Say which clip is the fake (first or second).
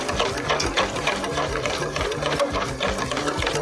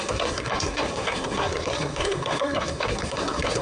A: second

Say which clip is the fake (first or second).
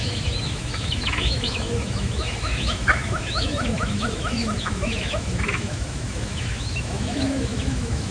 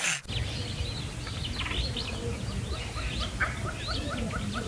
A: first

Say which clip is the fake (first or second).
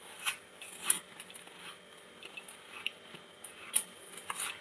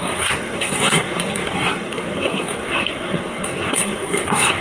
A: second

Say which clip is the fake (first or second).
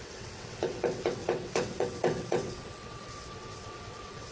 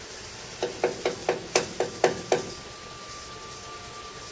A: first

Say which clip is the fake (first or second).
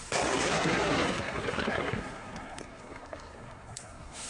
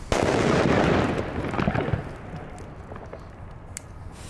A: first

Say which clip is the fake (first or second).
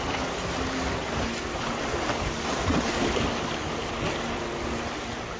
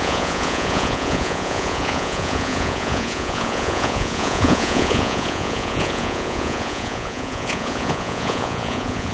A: second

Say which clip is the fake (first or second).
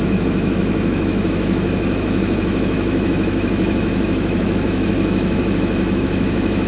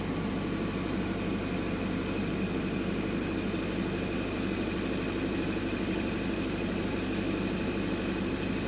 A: first